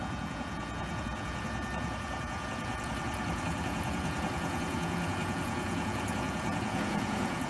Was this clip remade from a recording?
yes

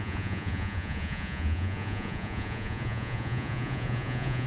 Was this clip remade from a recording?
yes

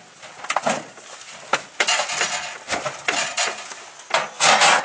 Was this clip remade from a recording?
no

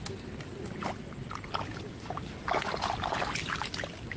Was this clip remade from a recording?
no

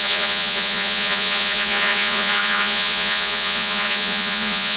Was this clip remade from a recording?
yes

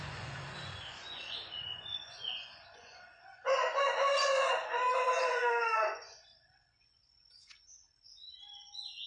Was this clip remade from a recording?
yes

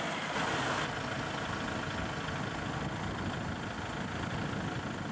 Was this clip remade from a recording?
no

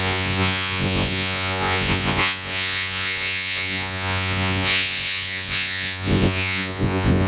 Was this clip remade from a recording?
yes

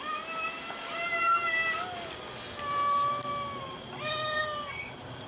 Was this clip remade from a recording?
no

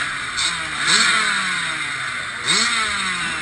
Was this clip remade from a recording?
no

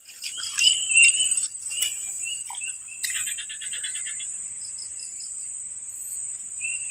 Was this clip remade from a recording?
no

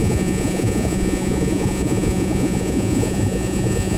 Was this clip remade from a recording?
yes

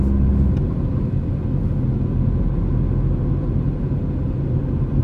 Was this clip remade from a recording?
no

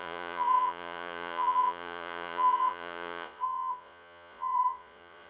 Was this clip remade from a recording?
yes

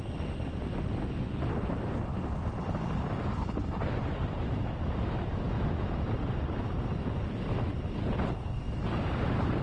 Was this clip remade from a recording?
no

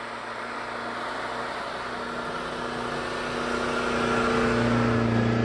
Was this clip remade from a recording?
no